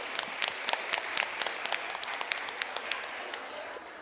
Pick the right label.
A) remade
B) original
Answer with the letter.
B